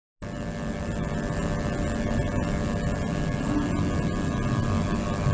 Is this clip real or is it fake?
real